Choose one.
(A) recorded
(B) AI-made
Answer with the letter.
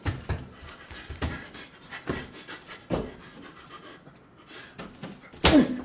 A